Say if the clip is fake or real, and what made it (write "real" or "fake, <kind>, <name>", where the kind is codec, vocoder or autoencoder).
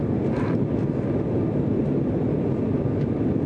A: real